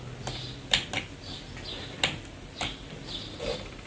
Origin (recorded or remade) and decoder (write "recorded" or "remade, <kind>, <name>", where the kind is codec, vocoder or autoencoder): recorded